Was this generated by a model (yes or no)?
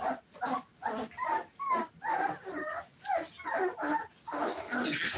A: no